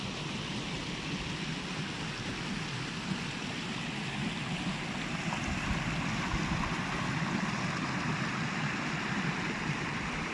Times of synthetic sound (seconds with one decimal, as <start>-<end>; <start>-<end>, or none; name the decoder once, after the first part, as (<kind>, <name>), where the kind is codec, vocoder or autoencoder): none